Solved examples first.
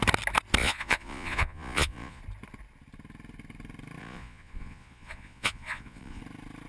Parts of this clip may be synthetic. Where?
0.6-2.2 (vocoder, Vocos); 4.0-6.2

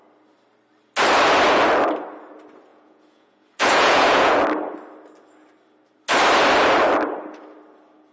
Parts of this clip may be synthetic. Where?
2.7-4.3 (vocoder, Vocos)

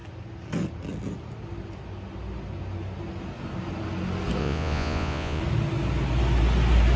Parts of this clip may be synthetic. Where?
4.4-5.4 (vocoder, Vocos)